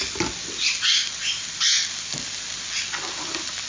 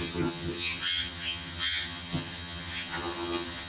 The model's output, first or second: second